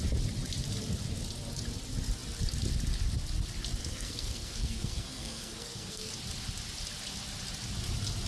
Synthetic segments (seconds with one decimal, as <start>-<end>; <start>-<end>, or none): 3.8-6.1

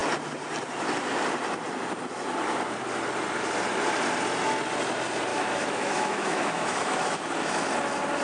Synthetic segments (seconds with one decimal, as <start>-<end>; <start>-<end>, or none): 5.3-7.2

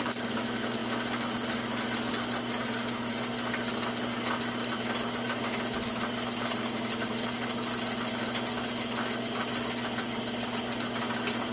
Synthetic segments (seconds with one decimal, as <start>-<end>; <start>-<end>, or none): none

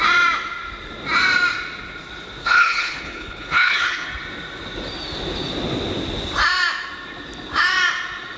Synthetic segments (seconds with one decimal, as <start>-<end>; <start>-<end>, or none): 2.4-4.1

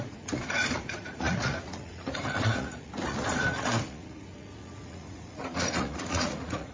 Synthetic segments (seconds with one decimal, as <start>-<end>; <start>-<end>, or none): 0.0-6.7

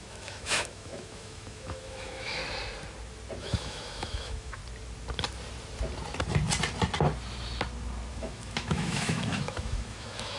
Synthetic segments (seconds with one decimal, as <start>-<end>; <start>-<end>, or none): 0.0-2.4; 3.4-4.6; 8.1-10.4